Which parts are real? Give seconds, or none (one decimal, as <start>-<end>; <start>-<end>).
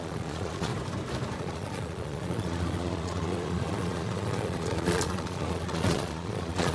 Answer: 0.7-1.4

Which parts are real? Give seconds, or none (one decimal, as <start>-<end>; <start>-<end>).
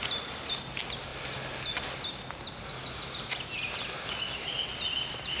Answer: 0.0-5.4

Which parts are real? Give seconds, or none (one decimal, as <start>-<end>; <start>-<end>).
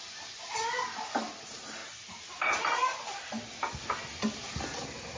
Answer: 0.0-5.2